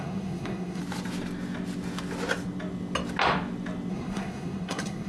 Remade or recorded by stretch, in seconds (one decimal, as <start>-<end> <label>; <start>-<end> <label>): 0.0-0.8 remade; 0.8-3.9 recorded; 3.9-5.1 remade